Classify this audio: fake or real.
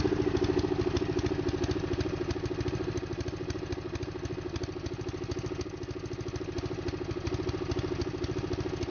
real